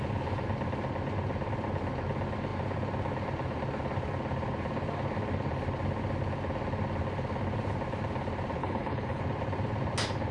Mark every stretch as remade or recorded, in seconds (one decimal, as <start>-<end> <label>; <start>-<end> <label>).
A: 0.0-8.6 recorded; 8.6-9.2 remade; 9.2-10.3 recorded